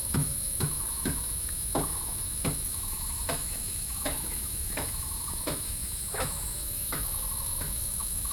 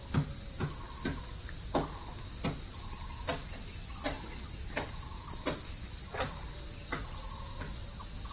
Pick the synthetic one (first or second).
first